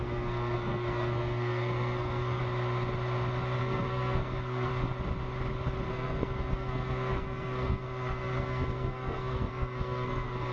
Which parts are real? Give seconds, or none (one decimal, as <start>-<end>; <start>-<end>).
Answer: 2.4-3.6; 4.7-5.9

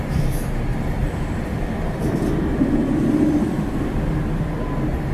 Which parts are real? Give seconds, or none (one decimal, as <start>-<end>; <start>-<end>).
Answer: 0.0-0.7; 3.8-5.1

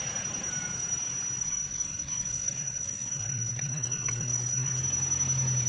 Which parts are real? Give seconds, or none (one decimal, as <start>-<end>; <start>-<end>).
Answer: 0.0-1.4; 4.8-5.7

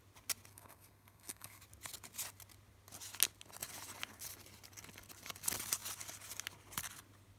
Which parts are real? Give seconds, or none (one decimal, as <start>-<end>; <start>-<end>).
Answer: 0.0-0.5; 1.6-7.4

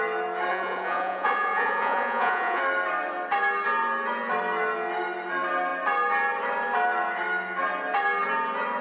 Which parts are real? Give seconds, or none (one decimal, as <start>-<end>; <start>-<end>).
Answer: 0.0-0.5; 2.6-8.8

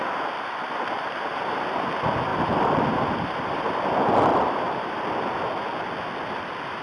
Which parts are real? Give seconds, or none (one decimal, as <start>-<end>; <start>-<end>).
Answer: 0.0-1.0; 1.9-2.3; 3.6-4.3; 4.9-6.8

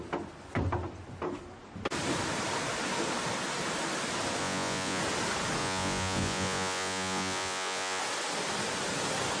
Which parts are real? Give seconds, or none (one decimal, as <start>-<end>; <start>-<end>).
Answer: 0.0-4.4; 5.0-5.6; 8.0-9.4

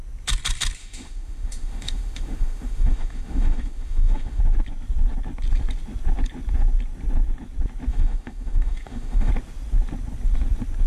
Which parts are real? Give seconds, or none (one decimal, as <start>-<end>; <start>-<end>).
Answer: 0.0-0.8; 4.4-7.9; 9.3-10.9